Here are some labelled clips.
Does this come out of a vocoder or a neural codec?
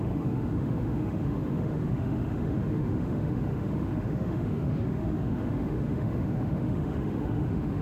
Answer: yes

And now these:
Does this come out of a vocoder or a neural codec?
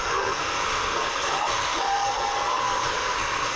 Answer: yes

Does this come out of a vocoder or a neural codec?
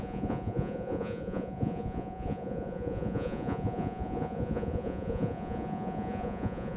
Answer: yes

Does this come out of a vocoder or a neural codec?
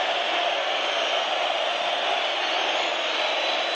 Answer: no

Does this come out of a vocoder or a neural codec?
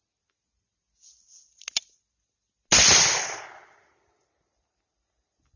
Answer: no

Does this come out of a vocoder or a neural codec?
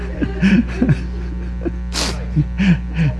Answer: no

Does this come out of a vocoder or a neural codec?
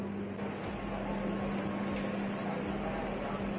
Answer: no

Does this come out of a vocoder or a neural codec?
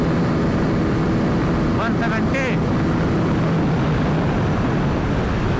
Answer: no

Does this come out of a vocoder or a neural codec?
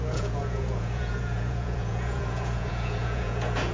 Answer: yes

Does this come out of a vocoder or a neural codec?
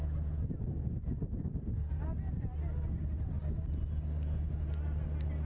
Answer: no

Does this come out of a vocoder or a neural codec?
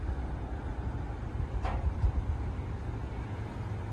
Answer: no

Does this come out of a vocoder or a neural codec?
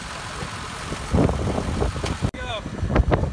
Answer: yes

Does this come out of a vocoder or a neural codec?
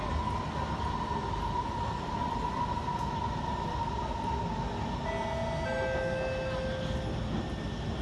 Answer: no